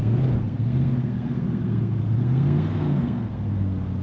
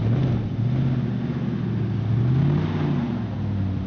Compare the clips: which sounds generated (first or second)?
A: first